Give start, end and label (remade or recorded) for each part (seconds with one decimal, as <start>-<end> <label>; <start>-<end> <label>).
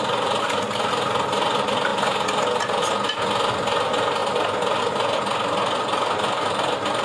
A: 0.0-7.0 recorded